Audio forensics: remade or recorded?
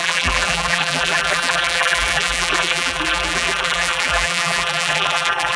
remade